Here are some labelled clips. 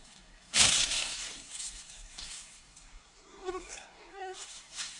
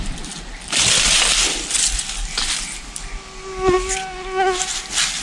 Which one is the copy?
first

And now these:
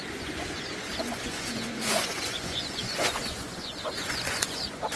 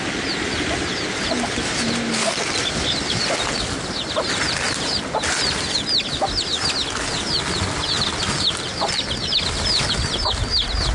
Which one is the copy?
first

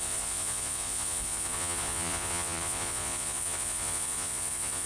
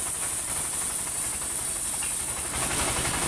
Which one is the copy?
first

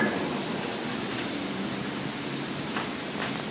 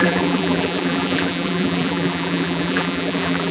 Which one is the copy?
second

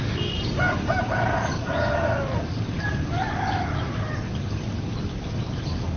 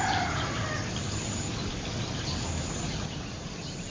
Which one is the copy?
second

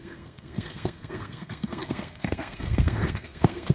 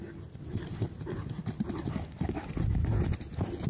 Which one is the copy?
first